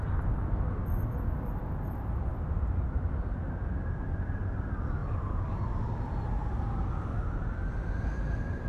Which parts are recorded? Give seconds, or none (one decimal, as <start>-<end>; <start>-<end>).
0.0-2.3; 3.1-5.0; 5.6-8.7